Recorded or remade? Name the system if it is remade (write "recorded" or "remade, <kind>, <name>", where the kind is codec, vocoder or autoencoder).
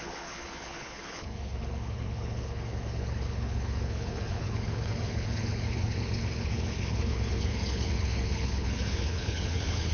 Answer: remade, codec, HILCodec